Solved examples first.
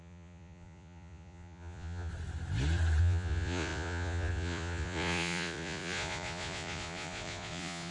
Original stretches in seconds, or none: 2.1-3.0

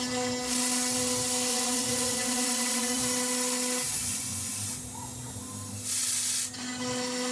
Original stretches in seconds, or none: 0.0-1.5; 3.0-4.0; 4.5-7.3

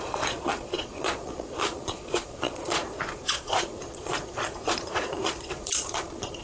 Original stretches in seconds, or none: none

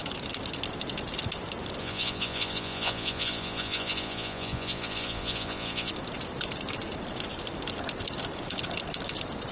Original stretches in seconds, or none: 0.0-1.8; 5.9-9.5